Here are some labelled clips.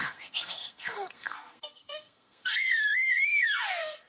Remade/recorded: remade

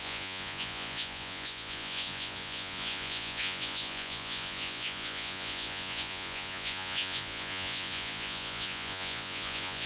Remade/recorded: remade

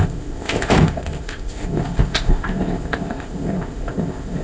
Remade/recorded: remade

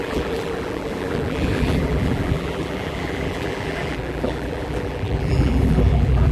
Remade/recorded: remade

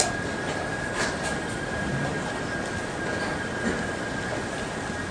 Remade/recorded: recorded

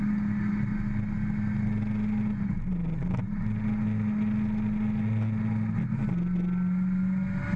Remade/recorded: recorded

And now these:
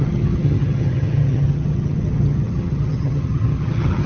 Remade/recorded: remade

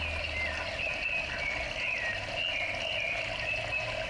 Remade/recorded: recorded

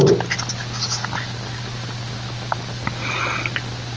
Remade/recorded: recorded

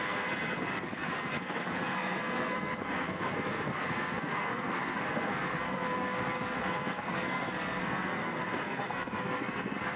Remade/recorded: remade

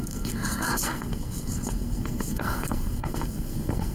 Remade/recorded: remade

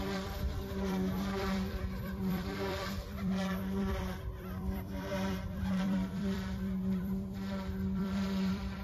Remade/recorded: remade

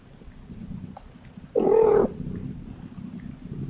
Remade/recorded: recorded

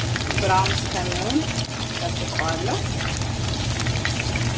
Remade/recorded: recorded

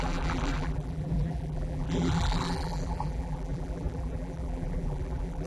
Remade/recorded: remade